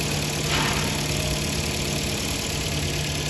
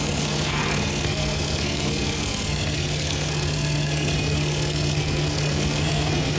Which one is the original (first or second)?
first